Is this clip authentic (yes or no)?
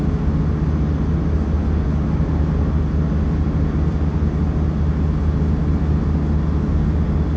yes